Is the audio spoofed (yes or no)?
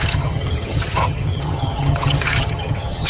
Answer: yes